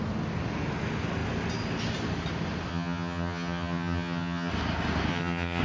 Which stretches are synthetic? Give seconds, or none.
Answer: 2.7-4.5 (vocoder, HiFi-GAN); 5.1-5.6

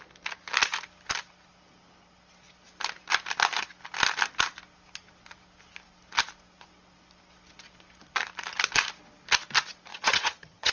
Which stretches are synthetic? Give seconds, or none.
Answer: 9.9-10.7 (vocoder, HiFi-GAN)

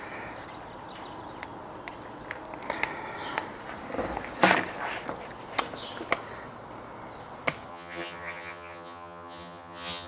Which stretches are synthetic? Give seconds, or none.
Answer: 7.7-10.1 (vocoder, HiFi-GAN)

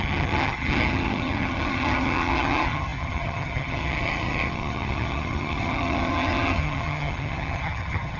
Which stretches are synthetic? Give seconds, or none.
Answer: 0.0-8.2 (vocoder, HiFi-GAN)

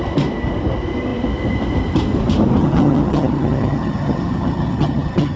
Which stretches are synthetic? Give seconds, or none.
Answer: 2.6-5.4 (vocoder, HiFi-GAN)

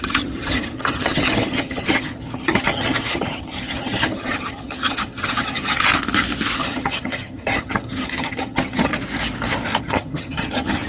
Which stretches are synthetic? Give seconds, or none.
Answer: 0.0-5.9 (vocoder, HiFi-GAN); 6.6-8.9; 9.8-10.9